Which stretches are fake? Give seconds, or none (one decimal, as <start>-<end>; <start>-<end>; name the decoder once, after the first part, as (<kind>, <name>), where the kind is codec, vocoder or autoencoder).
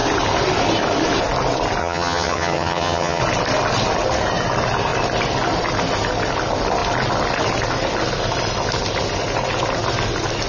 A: 1.8-3.2 (vocoder, HiFi-GAN)